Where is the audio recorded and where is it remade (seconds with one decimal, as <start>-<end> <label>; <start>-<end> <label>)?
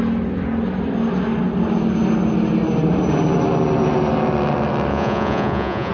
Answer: 0.0-4.9 recorded; 4.9-5.9 remade